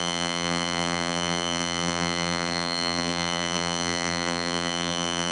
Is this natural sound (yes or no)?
no